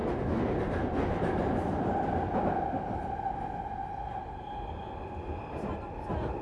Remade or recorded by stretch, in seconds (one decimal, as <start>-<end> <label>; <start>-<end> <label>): 0.0-6.4 recorded